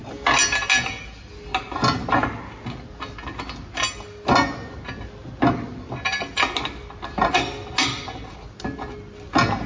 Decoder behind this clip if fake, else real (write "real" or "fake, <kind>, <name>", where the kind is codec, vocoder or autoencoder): real